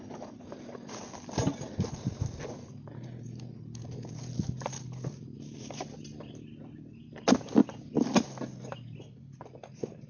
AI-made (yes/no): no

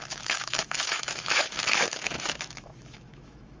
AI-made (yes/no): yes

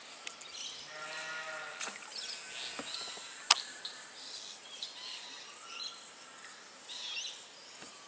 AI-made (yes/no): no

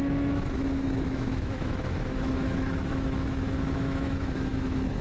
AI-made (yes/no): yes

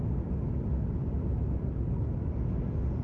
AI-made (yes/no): no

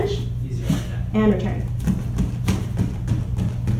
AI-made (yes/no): no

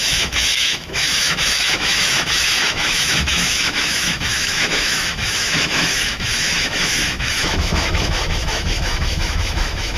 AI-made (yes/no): yes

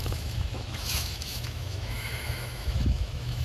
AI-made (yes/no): yes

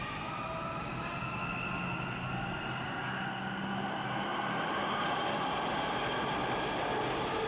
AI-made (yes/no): no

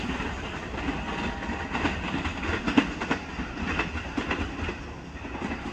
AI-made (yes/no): no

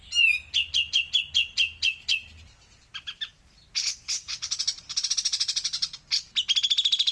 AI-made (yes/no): no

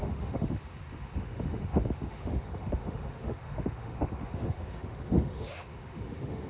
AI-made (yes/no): yes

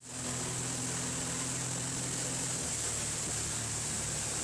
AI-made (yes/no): no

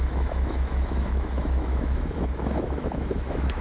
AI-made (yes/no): yes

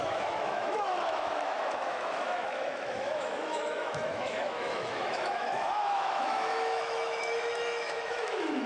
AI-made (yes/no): yes